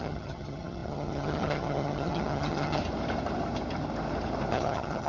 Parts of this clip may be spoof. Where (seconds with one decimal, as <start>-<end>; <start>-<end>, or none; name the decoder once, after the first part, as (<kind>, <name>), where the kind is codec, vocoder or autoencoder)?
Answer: 0.0-2.8 (vocoder, HiFi-GAN); 4.5-5.1